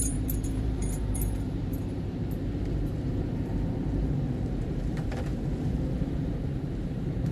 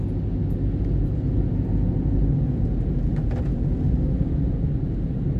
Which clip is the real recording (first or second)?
second